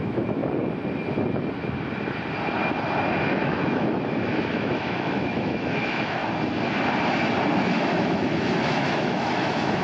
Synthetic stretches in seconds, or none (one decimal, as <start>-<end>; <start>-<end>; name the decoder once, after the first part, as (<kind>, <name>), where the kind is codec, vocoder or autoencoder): 0.0-0.4 (autoencoder, DAC-VAE); 3.2-6.2; 7.5-9.8